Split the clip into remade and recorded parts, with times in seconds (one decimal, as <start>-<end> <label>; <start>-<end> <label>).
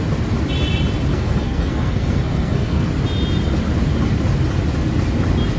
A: 0.0-1.1 recorded; 1.1-2.9 remade; 2.9-5.6 recorded